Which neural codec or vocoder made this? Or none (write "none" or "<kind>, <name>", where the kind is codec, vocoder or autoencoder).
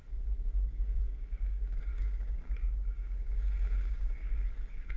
codec, DAC